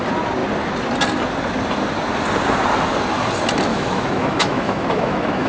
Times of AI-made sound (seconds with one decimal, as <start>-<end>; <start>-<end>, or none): 3.7-5.5